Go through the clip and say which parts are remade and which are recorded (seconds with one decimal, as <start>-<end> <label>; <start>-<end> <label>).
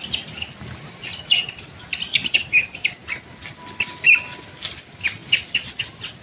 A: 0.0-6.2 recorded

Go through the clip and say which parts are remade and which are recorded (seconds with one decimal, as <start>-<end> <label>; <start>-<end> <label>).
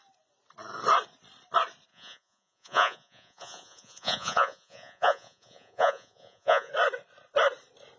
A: 0.0-1.9 recorded; 1.9-6.7 remade; 6.7-8.0 recorded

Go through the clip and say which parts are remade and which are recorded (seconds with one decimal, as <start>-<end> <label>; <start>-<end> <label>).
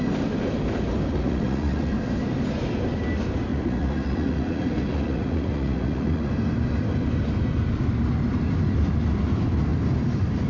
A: 0.0-1.1 recorded; 1.1-1.9 remade; 1.9-3.5 recorded; 3.5-6.3 remade; 6.3-10.5 recorded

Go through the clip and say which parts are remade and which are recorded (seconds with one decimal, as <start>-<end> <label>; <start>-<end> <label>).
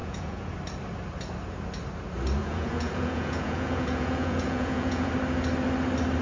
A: 0.0-0.5 remade; 0.5-2.4 recorded; 2.4-5.1 remade; 5.1-6.2 recorded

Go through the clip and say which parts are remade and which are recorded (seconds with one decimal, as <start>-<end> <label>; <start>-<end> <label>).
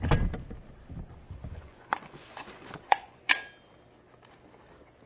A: 0.0-1.5 recorded; 1.5-3.3 remade; 3.3-5.1 recorded